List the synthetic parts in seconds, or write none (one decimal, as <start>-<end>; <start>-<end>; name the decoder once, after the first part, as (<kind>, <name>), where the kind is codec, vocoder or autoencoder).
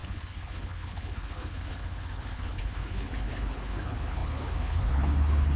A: 0.0-5.6 (codec, HILCodec)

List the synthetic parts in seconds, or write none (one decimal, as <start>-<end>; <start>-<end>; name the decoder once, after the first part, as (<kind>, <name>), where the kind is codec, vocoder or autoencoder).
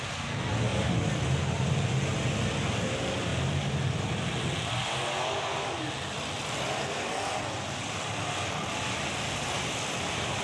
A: none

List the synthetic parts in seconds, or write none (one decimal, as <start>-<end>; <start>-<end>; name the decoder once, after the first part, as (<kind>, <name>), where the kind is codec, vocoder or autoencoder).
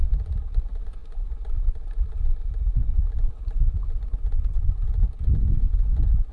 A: 0.0-0.6 (vocoder, BigVGAN v2); 1.0-4.8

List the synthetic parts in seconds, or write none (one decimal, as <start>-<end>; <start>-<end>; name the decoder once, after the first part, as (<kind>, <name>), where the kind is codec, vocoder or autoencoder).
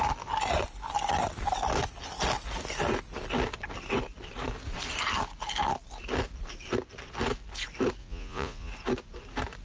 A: 8.0-8.7 (vocoder, Vocos)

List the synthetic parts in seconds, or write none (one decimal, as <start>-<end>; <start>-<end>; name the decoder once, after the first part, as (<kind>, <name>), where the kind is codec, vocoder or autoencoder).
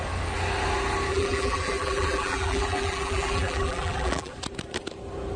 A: 1.1-4.3 (vocoder, BigVGAN v2)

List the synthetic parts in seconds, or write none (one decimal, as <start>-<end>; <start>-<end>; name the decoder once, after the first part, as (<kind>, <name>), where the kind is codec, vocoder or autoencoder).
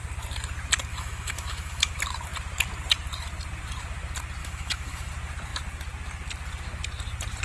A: 0.9-1.9 (autoencoder, DAC-VAE); 4.4-5.1